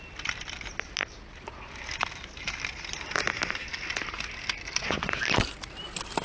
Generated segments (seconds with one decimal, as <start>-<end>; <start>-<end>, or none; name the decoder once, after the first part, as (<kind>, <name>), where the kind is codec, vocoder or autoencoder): none